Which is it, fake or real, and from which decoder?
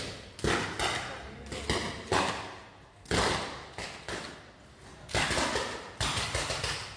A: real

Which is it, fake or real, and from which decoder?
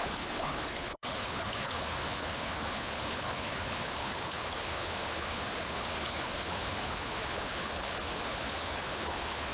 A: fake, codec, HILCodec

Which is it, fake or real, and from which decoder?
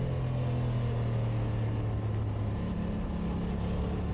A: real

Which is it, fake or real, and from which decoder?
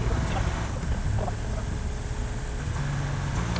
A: real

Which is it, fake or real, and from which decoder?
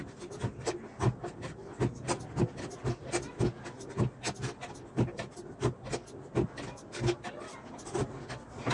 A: real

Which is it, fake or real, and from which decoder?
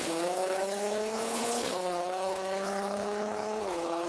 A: fake, codec, HILCodec